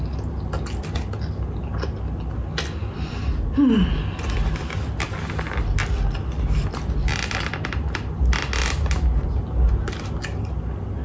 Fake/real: real